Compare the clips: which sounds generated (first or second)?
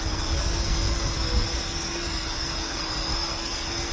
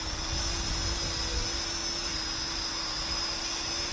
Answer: first